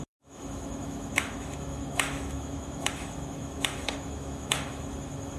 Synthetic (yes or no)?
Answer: yes